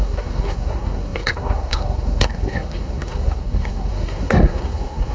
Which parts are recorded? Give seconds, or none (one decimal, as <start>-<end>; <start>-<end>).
none